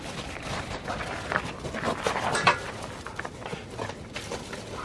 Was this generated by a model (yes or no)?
no